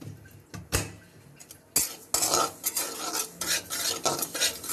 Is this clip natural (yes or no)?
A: yes